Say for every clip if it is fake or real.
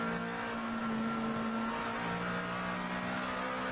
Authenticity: real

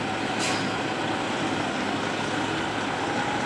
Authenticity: real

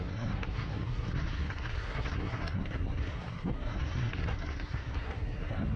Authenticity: fake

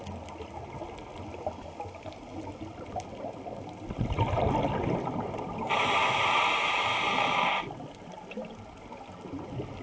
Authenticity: real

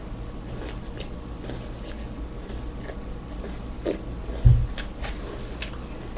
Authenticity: real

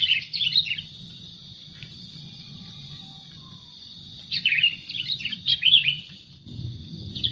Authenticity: fake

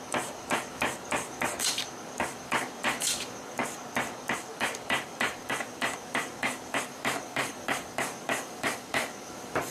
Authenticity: fake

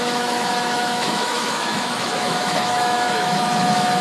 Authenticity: fake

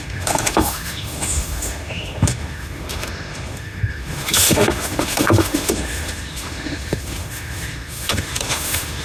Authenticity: fake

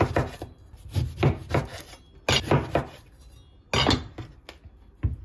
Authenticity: real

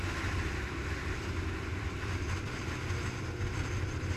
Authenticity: real